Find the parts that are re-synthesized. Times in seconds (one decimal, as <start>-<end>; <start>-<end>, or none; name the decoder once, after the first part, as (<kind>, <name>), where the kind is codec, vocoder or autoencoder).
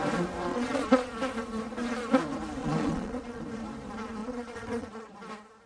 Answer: 0.5-1.1 (vocoder, Vocos); 2.6-3.4; 4.2-5.2